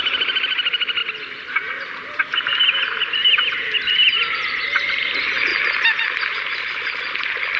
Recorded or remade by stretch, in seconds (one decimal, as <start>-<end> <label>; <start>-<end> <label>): 0.0-7.6 recorded